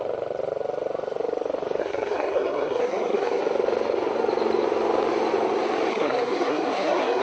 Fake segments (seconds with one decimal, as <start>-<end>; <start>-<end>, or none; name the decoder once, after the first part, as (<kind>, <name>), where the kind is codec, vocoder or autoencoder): 1.8-3.4 (codec, SNAC); 5.9-7.2

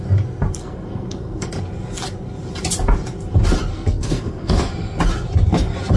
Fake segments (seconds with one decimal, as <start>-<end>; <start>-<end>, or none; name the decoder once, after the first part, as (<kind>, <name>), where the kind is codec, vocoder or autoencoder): 0.6-1.5 (codec, SNAC); 3.7-4.7

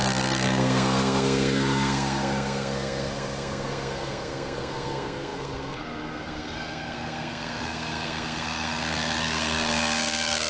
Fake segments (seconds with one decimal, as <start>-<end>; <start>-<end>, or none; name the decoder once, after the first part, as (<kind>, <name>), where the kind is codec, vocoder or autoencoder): 0.0-10.5 (codec, SNAC)

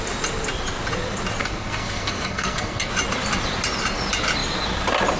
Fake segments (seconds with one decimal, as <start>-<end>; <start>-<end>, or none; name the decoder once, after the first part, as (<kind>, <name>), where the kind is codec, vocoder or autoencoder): 1.4-2.9 (codec, SNAC)

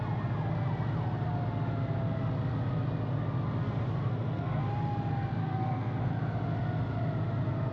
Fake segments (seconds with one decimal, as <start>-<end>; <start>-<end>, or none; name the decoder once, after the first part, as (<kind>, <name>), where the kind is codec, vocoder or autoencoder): 4.0-4.6 (codec, SNAC); 5.4-6.1

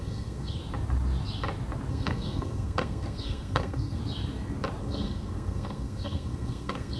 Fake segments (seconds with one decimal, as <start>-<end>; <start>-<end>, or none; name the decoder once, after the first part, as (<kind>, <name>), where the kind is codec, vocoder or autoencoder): 0.0-0.6 (codec, SNAC); 1.9-4.0; 4.8-7.0

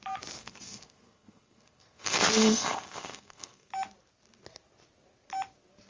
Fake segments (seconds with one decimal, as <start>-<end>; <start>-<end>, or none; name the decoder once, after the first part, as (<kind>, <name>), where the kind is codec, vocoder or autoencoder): 0.4-3.7 (codec, SNAC)